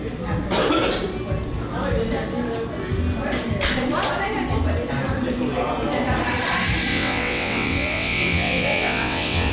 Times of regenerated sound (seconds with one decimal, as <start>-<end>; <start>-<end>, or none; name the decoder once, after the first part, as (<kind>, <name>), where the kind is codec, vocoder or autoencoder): 6.9-9.5 (vocoder, WaveNeXt)